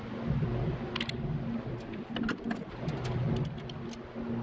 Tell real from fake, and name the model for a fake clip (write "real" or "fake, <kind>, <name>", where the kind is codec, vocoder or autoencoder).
real